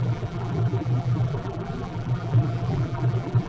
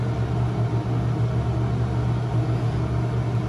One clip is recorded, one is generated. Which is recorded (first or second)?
second